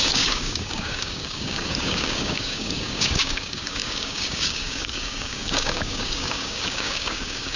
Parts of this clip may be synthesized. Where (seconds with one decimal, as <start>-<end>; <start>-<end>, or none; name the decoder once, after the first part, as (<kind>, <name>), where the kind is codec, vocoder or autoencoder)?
0.0-7.6 (codec, DAC)